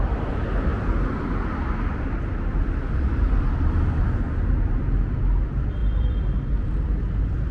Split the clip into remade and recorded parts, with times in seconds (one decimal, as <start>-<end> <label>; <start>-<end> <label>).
0.0-5.8 recorded; 5.8-6.4 remade; 6.4-7.5 recorded